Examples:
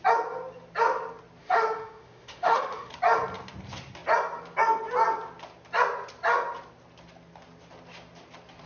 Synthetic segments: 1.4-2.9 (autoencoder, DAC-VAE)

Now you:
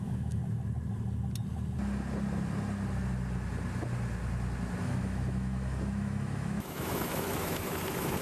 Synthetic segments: 0.0-0.4 (autoencoder, DAC-VAE); 4.8-8.2